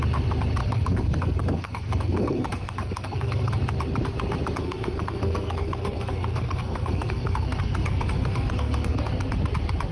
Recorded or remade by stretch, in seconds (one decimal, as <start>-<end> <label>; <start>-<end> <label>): 0.0-0.6 recorded; 0.6-3.5 remade; 3.5-4.6 recorded; 4.6-9.0 remade; 9.0-9.9 recorded